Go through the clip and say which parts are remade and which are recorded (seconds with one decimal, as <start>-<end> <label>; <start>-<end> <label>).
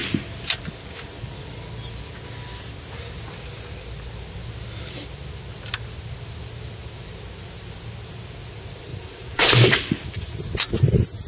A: 0.0-8.9 recorded; 8.9-9.8 remade; 9.8-11.3 recorded